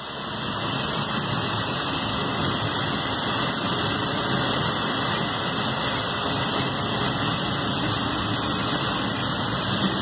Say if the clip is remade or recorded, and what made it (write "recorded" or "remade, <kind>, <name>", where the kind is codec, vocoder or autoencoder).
recorded